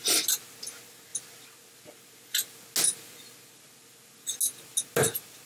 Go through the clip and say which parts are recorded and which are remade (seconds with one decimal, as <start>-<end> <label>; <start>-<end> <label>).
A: 0.0-5.5 recorded